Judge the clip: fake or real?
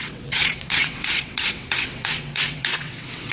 fake